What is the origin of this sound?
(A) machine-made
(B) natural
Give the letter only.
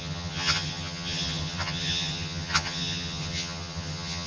A